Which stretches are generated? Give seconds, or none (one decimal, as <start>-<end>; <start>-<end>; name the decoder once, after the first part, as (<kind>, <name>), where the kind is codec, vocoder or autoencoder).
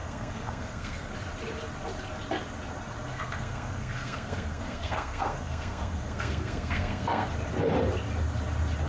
0.0-1.1 (codec, SNAC); 3.1-7.3